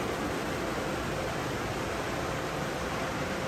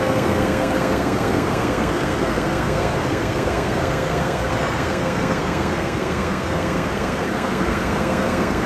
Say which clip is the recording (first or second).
first